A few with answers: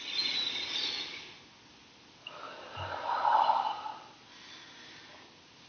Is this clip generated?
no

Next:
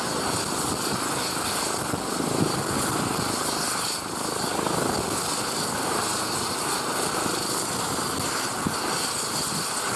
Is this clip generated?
no